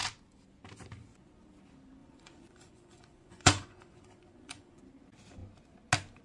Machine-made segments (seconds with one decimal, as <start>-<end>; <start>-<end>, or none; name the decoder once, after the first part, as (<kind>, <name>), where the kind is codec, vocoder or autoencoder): 2.0-4.8 (vocoder, Vocos)